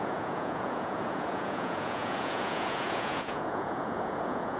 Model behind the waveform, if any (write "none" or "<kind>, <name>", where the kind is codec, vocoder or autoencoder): vocoder, Vocos